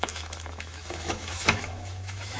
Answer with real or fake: fake